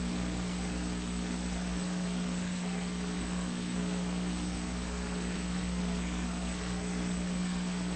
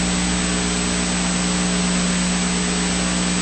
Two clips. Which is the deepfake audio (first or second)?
first